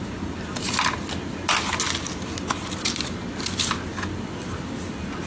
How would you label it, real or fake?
real